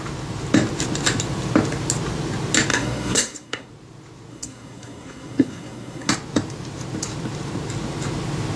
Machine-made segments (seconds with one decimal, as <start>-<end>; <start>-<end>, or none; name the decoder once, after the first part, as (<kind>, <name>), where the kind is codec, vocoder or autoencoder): 2.7-3.7 (codec, SNAC); 4.3-6.1